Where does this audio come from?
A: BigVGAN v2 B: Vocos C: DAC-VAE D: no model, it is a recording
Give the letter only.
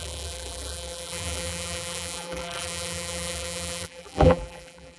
A